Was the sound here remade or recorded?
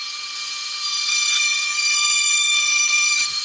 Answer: remade